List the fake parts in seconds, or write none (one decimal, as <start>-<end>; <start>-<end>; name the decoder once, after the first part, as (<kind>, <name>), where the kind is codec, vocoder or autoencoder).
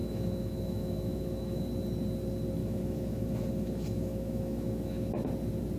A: 0.0-1.6 (autoencoder, DAC-VAE); 2.6-5.1